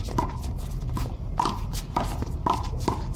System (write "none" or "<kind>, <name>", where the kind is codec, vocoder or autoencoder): none